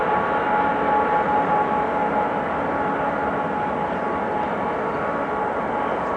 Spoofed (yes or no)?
no